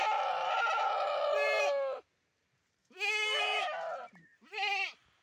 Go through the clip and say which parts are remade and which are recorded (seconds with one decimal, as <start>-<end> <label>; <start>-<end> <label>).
0.0-2.8 recorded; 2.8-3.7 remade; 3.7-5.2 recorded